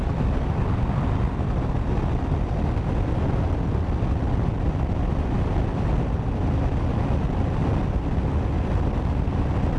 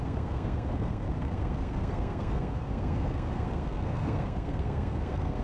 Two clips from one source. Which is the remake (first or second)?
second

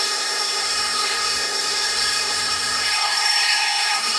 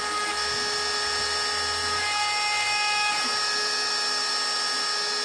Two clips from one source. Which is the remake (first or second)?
first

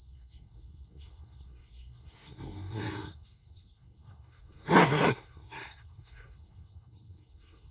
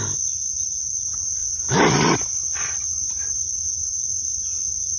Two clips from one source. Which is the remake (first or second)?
first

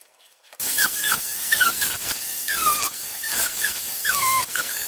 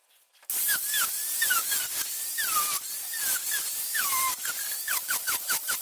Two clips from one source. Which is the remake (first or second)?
first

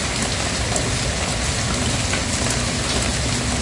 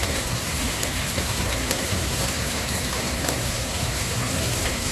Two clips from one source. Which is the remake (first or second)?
second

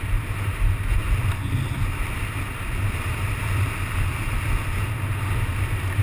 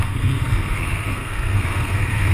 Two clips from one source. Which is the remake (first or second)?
second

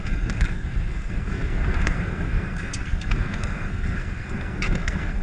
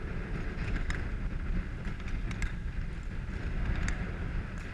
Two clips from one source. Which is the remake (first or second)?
first